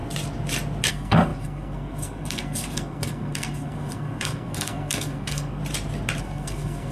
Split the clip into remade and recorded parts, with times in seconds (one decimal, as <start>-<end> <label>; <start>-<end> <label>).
0.0-0.9 recorded; 0.9-5.6 remade; 5.6-6.2 recorded; 6.2-6.9 remade